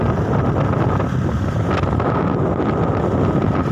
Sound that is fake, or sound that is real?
real